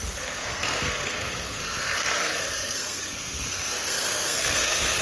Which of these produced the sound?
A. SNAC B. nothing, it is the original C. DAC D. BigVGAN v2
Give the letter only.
A